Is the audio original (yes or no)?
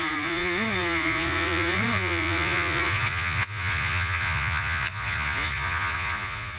no